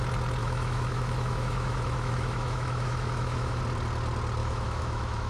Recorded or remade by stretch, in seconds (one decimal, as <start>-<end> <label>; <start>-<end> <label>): 0.0-0.4 recorded; 0.4-3.6 remade; 3.6-4.4 recorded; 4.4-5.3 remade